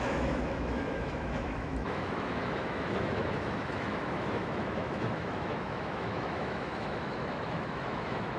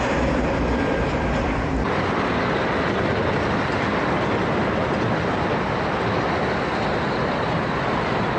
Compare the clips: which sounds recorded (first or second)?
second